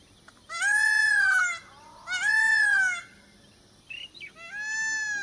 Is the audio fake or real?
real